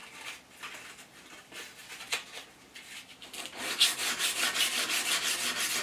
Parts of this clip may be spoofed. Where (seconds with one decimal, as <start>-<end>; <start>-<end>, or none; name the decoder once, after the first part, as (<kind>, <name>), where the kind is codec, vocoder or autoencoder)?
none